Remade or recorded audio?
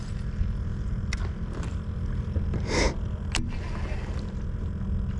recorded